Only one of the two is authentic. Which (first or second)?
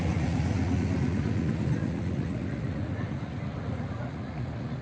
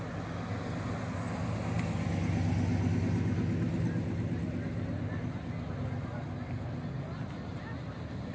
second